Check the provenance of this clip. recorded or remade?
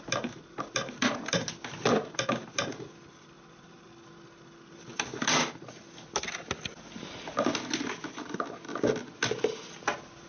recorded